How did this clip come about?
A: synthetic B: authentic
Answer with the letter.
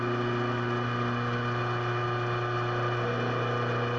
B